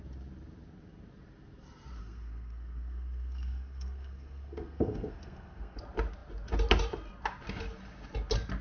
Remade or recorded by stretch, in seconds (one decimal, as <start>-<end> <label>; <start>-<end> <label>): 0.0-2.0 recorded; 2.0-5.8 remade; 5.8-8.6 recorded

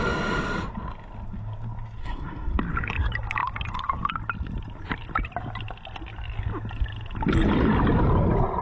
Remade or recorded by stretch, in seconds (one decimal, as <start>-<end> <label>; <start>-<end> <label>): 0.0-2.0 recorded; 2.0-2.5 remade; 2.5-8.6 recorded